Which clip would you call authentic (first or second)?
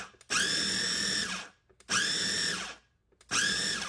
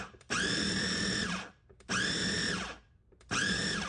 first